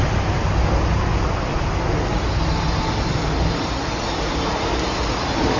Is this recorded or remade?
recorded